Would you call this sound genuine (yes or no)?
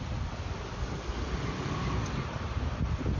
yes